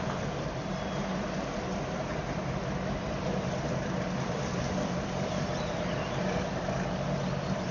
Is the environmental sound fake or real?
fake